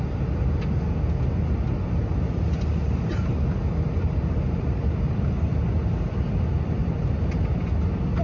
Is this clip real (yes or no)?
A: yes